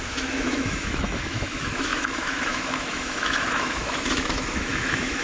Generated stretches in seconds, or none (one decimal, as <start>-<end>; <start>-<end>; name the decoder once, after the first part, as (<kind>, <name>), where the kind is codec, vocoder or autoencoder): 0.0-5.2 (autoencoder, DAC-VAE)